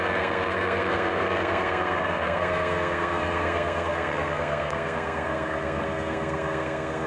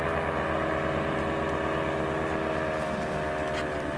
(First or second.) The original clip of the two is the second